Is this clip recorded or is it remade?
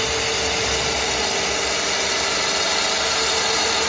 recorded